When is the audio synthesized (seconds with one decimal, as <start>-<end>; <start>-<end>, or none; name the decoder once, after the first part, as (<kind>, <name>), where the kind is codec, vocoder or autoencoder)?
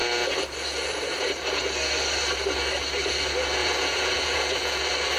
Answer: 3.6-4.8 (vocoder, Vocos)